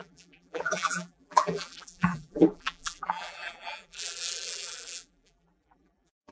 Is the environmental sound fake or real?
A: fake